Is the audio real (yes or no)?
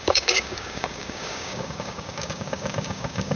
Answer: no